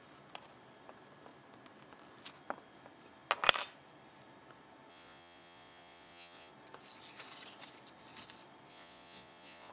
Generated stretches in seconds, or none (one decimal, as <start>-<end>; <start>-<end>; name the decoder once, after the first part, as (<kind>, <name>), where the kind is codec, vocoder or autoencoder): 4.9-6.5 (vocoder, Vocos); 8.7-9.7